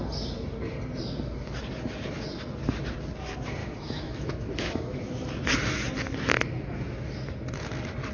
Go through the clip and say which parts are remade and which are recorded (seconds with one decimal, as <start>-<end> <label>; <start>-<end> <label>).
0.0-3.6 recorded; 3.6-5.1 remade; 5.1-8.1 recorded